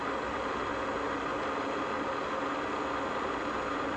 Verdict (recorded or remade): recorded